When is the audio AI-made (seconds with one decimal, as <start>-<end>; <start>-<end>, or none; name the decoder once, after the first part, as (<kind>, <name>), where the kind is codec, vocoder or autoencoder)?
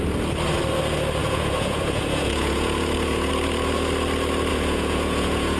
1.2-3.3 (vocoder, Vocos); 4.5-5.6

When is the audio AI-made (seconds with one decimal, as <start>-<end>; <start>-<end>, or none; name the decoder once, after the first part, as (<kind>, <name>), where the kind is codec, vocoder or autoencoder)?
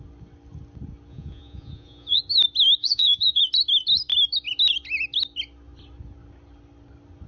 1.1-2.2 (vocoder, Vocos); 2.8-3.4